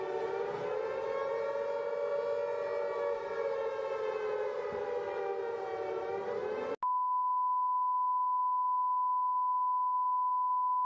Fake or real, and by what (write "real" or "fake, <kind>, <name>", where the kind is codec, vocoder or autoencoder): real